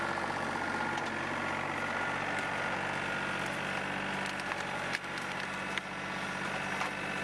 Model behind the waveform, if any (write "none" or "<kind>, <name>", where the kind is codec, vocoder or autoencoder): none